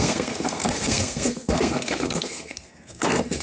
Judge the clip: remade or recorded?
remade